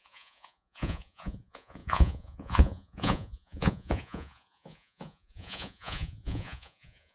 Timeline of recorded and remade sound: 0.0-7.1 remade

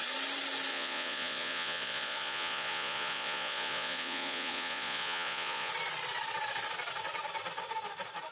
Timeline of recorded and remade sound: 0.0-0.7 recorded; 0.7-5.7 remade; 5.7-8.3 recorded

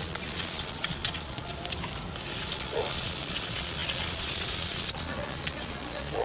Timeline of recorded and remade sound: 0.0-1.5 remade; 1.5-2.5 recorded; 2.5-6.2 remade

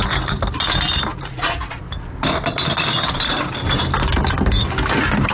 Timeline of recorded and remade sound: 0.0-1.1 recorded; 1.1-1.8 remade; 1.8-5.3 recorded